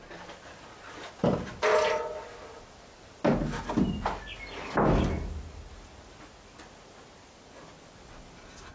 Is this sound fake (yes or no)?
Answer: no